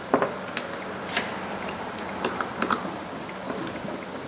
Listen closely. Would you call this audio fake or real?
real